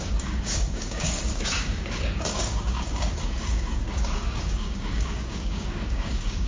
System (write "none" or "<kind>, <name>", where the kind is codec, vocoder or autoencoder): codec, DAC